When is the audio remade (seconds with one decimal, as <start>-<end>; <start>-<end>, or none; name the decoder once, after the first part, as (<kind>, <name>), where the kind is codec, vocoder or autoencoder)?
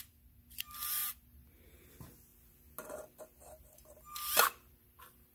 none